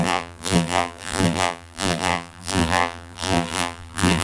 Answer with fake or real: fake